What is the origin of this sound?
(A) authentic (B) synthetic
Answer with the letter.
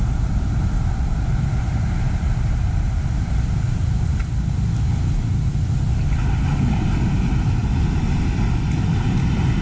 A